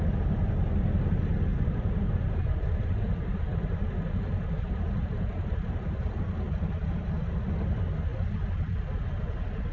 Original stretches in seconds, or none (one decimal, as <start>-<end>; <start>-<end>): 0.0-1.5; 6.1-9.7